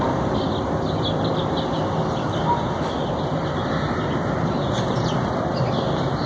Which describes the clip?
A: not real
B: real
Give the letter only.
B